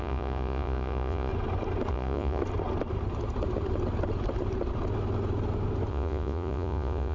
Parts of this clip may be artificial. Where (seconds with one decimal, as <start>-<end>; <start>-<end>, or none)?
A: 0.0-1.3; 1.9-2.4; 5.9-7.1